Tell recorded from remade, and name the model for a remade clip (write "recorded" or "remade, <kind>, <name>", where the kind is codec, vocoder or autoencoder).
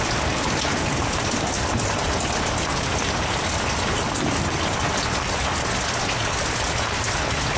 recorded